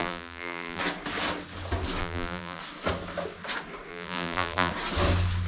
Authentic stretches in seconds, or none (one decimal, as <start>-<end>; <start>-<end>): 0.8-2.0; 2.6-3.9; 4.7-5.5